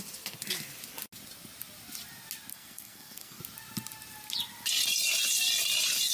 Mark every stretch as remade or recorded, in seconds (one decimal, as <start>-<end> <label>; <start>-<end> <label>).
0.0-2.5 recorded; 2.5-3.4 remade; 3.4-6.1 recorded